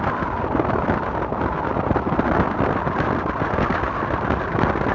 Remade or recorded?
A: recorded